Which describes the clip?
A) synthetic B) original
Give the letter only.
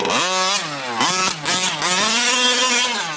B